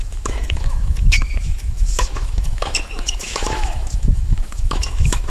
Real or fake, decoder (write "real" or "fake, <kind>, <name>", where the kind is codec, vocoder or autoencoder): fake, autoencoder, DAC-VAE